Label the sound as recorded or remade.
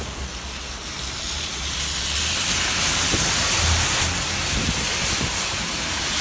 recorded